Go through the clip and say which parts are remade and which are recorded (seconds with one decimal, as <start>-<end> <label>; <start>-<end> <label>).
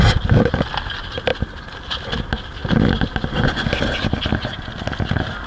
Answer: 0.0-5.5 recorded